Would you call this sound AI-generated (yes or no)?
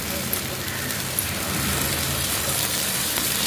yes